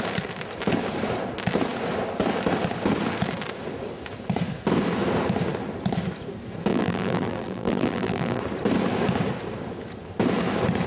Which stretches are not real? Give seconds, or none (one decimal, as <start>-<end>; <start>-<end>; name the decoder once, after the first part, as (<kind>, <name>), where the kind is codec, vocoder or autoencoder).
6.7-8.4 (vocoder, BigVGAN v2)